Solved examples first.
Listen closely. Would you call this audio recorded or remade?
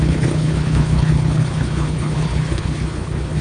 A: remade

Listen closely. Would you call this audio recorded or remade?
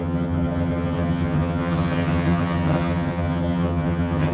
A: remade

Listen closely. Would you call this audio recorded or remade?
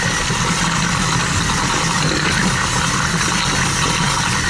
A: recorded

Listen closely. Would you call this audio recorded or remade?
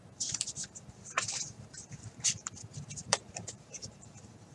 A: remade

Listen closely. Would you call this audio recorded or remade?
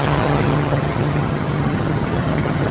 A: remade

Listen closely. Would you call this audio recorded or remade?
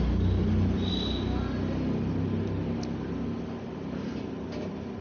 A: recorded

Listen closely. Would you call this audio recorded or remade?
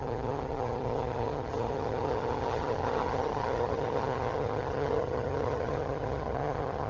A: remade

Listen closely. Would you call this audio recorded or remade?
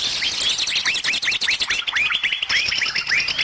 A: recorded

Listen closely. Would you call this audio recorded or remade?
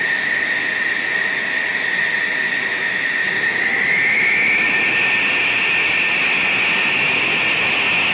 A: recorded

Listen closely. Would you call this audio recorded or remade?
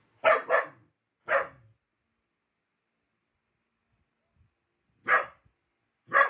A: recorded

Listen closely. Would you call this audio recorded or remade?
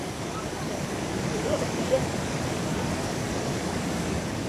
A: remade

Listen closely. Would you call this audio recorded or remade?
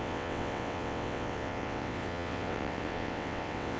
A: remade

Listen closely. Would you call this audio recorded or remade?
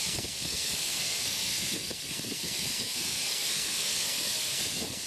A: remade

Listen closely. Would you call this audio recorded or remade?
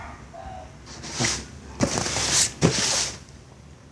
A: recorded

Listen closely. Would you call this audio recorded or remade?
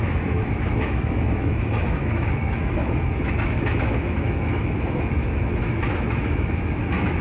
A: remade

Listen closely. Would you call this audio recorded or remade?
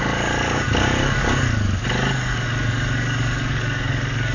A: remade